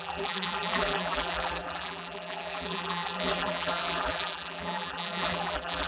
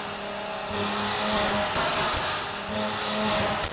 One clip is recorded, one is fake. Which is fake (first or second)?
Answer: first